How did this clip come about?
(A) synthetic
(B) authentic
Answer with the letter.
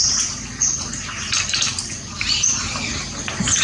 B